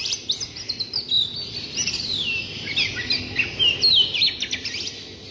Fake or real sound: real